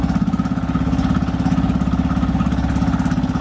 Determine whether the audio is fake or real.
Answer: real